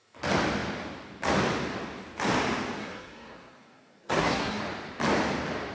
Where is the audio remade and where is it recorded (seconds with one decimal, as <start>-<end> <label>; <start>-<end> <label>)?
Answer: 0.0-2.8 recorded; 2.8-4.6 remade; 4.6-5.7 recorded